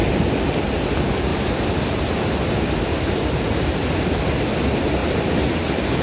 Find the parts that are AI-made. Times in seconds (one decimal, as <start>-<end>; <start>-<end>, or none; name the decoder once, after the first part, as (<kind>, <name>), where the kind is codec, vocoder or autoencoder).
none